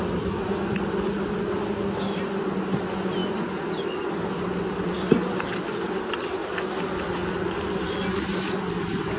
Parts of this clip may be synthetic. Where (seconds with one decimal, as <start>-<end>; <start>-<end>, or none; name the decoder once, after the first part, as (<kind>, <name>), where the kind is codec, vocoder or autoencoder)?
none